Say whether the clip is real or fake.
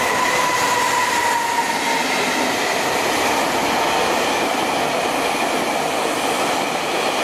real